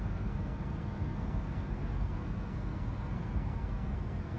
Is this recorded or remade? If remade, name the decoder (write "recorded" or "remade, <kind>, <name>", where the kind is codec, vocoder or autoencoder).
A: remade, codec, SNAC